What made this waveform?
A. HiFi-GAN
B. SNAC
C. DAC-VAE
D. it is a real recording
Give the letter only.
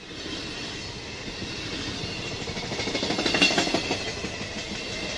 D